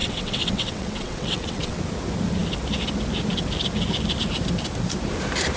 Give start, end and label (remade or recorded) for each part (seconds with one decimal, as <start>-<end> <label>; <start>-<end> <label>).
0.0-1.8 remade; 1.8-5.6 recorded